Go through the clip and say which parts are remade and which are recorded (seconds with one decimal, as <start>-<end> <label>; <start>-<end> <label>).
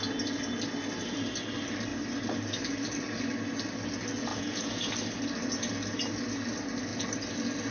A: 0.0-4.3 recorded; 4.3-4.9 remade; 4.9-7.7 recorded